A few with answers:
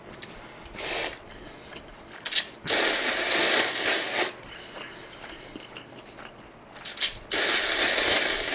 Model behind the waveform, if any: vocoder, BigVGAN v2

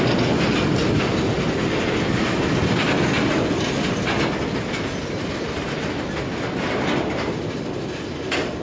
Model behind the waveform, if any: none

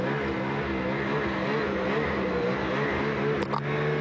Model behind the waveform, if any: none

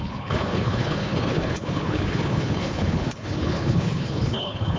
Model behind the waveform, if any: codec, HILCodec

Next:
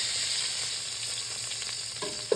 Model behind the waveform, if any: none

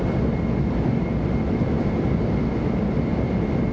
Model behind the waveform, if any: none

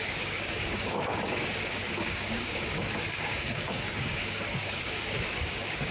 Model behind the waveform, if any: codec, DAC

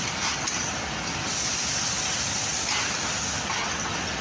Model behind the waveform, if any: none